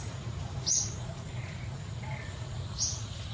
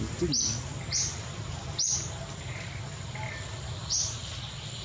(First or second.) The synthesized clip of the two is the first